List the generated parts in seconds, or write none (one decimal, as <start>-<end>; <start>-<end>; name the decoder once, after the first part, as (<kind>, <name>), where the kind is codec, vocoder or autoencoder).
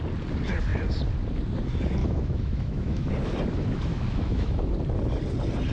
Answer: 2.0-3.1 (autoencoder, DAC-VAE); 3.9-4.7